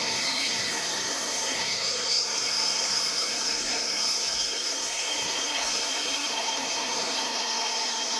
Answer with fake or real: fake